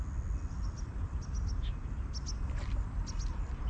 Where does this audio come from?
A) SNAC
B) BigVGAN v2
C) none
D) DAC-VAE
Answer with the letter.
C